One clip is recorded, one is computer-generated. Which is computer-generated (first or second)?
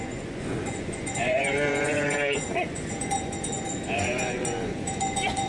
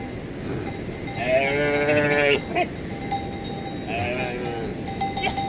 first